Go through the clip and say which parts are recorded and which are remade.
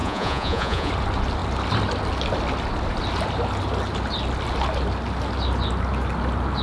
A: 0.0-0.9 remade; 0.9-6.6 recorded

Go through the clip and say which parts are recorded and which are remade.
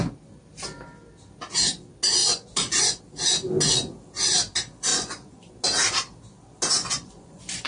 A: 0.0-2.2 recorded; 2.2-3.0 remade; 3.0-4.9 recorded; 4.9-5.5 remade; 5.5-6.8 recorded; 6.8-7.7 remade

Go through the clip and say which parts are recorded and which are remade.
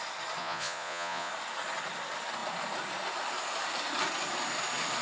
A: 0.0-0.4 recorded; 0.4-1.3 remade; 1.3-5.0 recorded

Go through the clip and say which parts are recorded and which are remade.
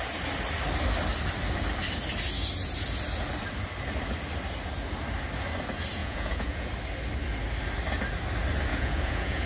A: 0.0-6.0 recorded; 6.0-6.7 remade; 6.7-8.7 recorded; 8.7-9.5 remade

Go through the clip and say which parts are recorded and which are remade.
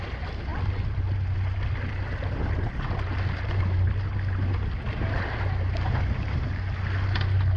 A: 0.0-7.6 recorded